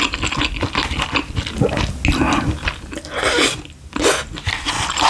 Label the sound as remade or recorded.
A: recorded